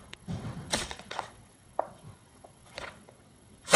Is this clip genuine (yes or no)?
no